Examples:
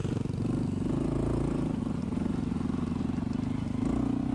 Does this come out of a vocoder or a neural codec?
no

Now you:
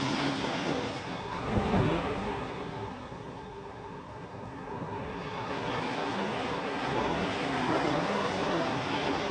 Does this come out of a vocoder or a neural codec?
yes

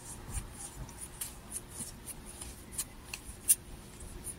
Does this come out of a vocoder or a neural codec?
no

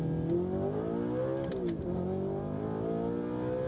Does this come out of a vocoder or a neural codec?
no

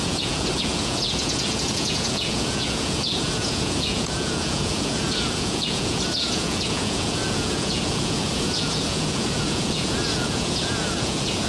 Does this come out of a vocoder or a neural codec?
yes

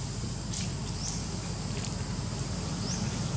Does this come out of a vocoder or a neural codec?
no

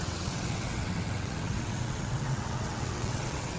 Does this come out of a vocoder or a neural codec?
yes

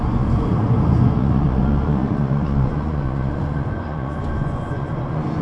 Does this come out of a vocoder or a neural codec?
yes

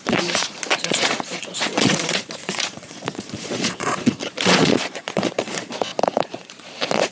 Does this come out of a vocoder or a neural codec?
yes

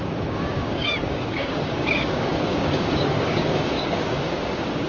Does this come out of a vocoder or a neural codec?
yes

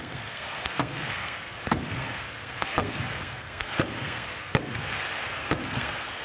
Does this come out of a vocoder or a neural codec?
yes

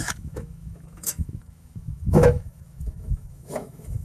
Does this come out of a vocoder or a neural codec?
yes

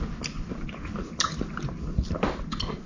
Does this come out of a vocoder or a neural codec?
no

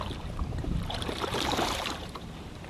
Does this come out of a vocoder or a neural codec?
yes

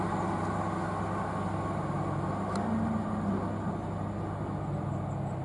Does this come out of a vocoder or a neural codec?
no